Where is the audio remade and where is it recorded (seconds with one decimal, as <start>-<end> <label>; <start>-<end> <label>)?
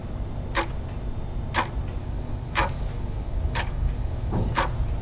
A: 0.0-2.0 recorded; 2.0-4.6 remade; 4.6-5.0 recorded